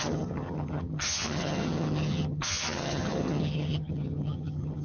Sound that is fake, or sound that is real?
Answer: fake